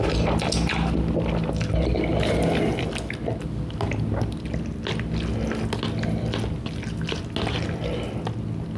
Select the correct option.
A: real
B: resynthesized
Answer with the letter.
A